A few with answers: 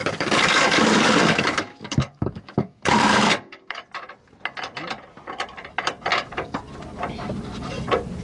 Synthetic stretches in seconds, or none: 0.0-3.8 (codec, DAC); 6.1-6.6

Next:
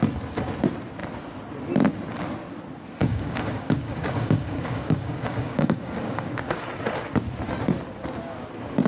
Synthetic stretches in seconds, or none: 3.0-6.6 (codec, DAC)